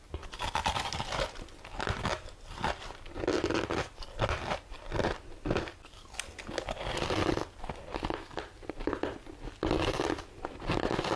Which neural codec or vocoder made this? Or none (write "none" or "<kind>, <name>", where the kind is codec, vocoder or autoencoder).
none